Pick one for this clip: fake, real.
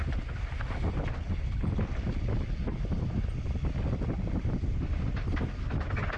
real